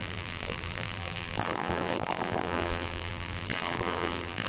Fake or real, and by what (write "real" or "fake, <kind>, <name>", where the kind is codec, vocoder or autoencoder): fake, vocoder, BigVGAN v2